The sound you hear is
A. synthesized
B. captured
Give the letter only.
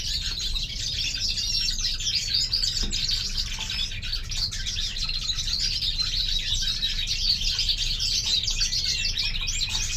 B